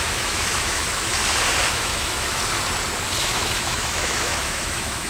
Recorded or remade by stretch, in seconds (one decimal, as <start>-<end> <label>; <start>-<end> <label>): 0.0-1.2 remade; 1.2-1.7 recorded; 1.7-2.4 remade; 2.4-3.2 recorded; 3.2-5.1 remade